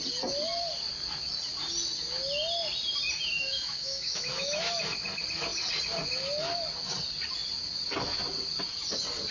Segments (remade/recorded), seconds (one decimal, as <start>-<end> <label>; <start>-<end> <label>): 0.0-3.3 recorded; 3.3-4.8 remade; 4.8-9.3 recorded